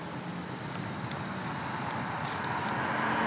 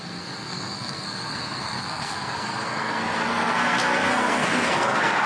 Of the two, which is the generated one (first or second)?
second